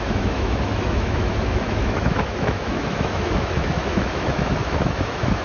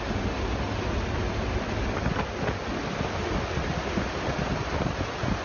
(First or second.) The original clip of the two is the second